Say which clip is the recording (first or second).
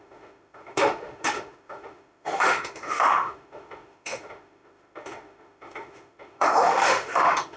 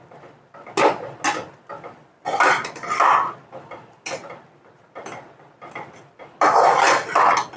second